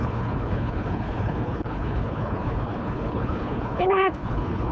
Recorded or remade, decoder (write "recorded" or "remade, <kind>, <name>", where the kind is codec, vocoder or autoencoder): remade, codec, HILCodec